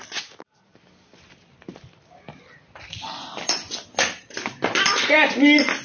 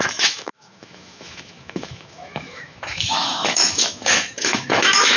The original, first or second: first